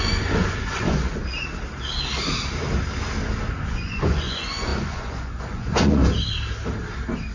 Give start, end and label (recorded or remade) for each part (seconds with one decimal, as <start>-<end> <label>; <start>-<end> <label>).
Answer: 0.0-1.2 remade; 1.2-3.5 recorded; 3.5-6.0 remade; 6.0-7.3 recorded